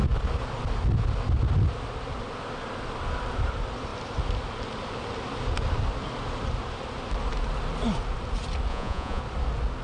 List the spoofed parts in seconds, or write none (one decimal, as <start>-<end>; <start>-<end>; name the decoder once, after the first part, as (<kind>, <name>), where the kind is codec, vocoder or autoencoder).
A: 8.7-9.2 (vocoder, Vocos)